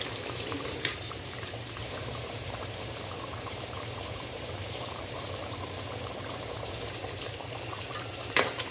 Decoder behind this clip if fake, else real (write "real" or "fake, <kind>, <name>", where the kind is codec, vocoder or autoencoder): fake, vocoder, BigVGAN v2